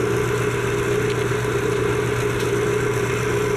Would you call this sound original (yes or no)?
yes